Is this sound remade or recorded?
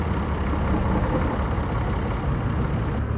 recorded